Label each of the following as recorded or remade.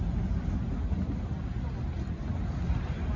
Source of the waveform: recorded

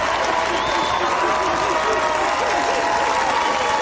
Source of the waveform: recorded